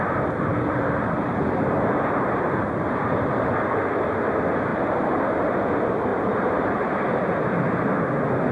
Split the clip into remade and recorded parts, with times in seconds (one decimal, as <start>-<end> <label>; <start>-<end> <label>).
0.0-0.5 recorded; 0.5-3.5 remade; 3.5-4.7 recorded; 4.7-5.5 remade; 5.5-6.1 recorded; 6.1-7.6 remade; 7.6-8.5 recorded

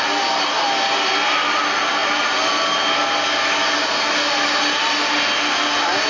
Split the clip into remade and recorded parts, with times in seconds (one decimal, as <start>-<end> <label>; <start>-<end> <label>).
0.0-6.1 recorded

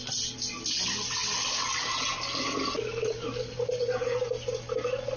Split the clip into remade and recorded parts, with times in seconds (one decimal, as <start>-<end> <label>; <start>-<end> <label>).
0.0-5.2 recorded

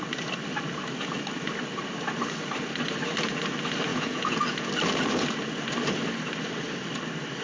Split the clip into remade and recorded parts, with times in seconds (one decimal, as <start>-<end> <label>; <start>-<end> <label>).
0.0-3.9 recorded; 3.9-4.7 remade; 4.7-7.4 recorded

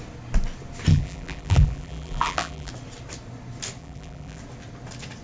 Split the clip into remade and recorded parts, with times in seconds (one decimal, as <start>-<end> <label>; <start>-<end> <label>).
0.0-0.9 recorded; 0.9-2.7 remade; 2.7-3.8 recorded; 3.8-4.4 remade; 4.4-5.2 recorded